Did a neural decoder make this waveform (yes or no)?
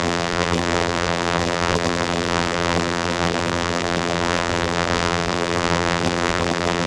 yes